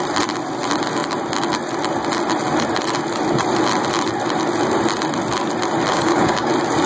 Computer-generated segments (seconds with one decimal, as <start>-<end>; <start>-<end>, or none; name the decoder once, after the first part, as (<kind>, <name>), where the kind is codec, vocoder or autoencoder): 5.9-6.5 (codec, DAC)